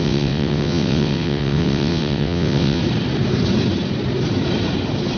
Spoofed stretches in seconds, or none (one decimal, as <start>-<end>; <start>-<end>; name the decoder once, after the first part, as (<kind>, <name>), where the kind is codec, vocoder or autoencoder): 0.0-2.8 (vocoder, WaveNeXt)